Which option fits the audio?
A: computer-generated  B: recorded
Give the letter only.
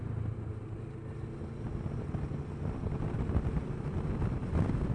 B